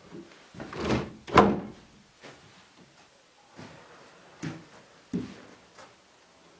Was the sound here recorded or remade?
recorded